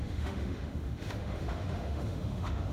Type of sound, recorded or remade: remade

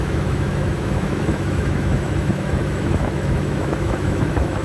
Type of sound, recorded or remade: remade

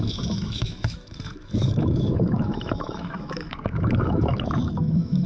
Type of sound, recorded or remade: remade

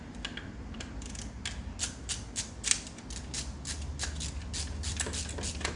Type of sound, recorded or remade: recorded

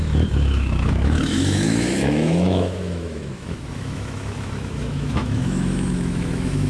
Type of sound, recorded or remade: remade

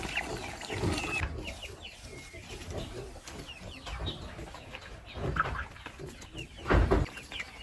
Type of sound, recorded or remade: recorded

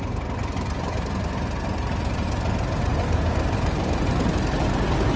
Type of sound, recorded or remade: recorded